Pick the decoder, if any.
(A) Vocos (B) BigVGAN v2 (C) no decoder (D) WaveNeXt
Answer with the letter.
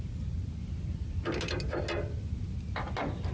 C